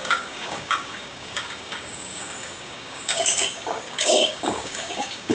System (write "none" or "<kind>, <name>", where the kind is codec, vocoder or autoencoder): codec, DAC